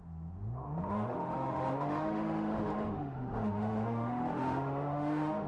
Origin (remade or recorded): remade